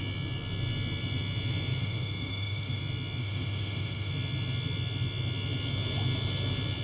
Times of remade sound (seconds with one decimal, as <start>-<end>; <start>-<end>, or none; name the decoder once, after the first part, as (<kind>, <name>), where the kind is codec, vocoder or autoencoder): 1.8-2.8 (autoencoder, DAC-VAE); 3.2-4.1